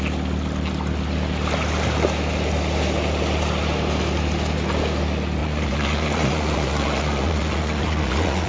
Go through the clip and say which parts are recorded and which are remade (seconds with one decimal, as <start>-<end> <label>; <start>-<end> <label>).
0.0-5.4 recorded; 5.4-8.5 remade